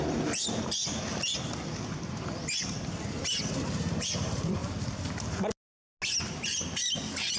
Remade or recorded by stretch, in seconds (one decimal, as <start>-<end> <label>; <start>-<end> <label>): 0.0-7.4 recorded